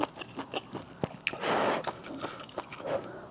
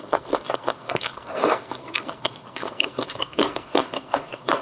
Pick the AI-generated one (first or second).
second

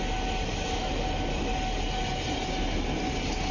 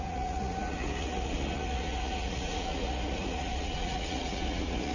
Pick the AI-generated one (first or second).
second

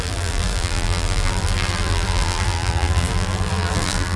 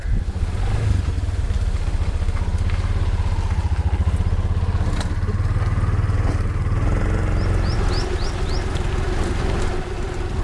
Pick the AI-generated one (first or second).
first